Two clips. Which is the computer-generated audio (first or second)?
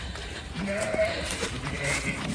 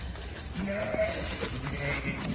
first